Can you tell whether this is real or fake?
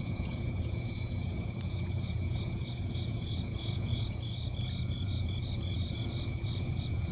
fake